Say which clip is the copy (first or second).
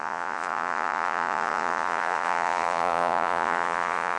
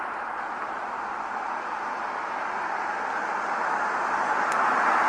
first